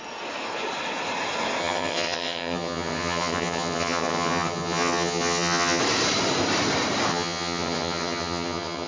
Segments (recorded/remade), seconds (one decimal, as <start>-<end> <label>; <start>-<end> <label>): 0.0-1.6 recorded; 1.6-5.8 remade; 5.8-7.1 recorded; 7.1-8.9 remade